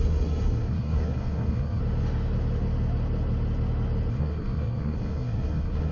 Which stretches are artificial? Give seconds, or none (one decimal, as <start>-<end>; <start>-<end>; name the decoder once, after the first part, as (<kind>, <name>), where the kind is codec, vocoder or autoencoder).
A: 0.0-1.8 (codec, SNAC); 4.1-5.9